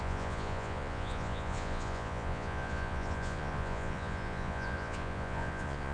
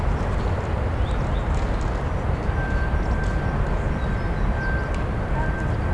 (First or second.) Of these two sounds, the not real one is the first